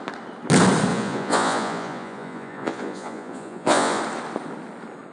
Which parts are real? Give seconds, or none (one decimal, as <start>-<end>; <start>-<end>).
0.0-0.9; 4.0-5.1